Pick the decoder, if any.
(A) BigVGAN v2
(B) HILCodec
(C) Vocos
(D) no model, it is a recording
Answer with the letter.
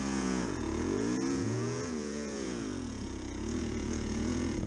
C